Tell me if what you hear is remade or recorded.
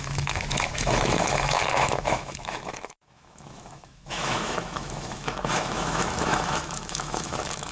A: remade